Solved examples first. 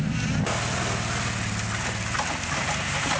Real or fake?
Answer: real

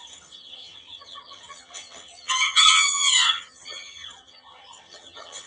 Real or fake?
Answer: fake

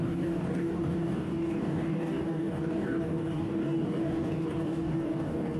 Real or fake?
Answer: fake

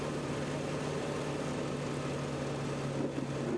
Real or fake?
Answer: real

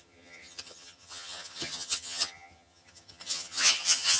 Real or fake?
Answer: fake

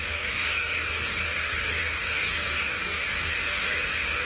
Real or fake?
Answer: fake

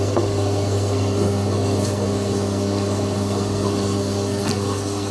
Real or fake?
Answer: fake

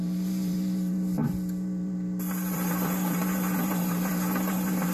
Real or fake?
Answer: fake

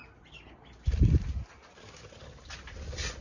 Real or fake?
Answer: real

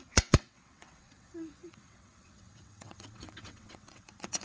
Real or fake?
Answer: fake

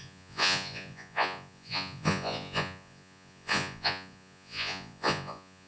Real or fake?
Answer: fake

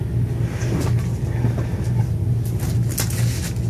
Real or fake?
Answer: real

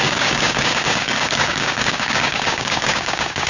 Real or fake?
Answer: fake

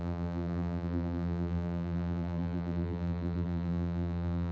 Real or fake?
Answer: fake